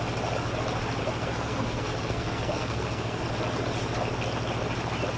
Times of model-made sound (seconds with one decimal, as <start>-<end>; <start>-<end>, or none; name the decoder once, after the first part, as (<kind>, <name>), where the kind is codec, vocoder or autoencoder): 1.0-3.2 (codec, SNAC)